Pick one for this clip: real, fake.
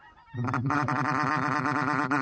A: real